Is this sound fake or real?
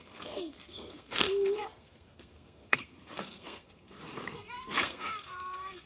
fake